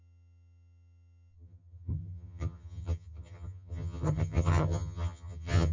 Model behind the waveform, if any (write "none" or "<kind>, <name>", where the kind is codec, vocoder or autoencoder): vocoder, HiFi-GAN